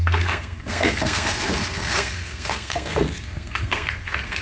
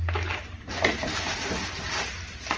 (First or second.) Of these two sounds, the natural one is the second